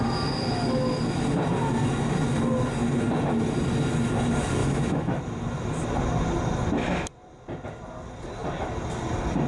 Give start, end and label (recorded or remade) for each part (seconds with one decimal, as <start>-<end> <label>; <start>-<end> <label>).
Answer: 0.0-4.6 recorded; 4.6-5.2 remade; 5.2-9.5 recorded